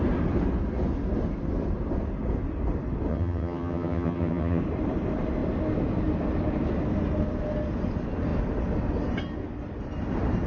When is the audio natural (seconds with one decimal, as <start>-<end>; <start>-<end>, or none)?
0.0-3.1; 4.6-10.5